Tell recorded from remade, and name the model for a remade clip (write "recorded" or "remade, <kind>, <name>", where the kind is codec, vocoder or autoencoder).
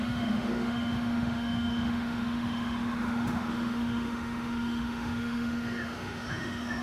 remade, autoencoder, DAC-VAE